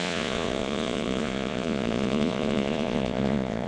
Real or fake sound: fake